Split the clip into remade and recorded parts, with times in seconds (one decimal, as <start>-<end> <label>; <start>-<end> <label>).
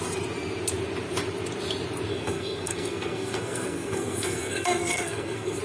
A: 0.0-2.1 recorded; 2.1-5.6 remade